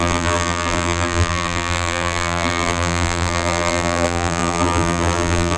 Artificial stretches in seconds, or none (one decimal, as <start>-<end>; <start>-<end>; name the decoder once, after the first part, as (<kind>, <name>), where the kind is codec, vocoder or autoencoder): 0.0-5.6 (vocoder, BigVGAN v2)